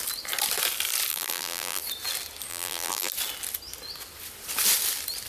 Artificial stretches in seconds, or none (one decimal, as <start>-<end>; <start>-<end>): 1.1-1.8; 2.5-3.1